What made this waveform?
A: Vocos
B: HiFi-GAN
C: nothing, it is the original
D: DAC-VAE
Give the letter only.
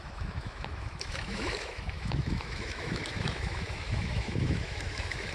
D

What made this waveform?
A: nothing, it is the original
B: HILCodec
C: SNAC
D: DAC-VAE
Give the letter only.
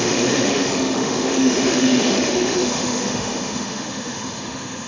D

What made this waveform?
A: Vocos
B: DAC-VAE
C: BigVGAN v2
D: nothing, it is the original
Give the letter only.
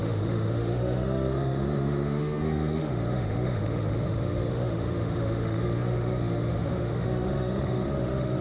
B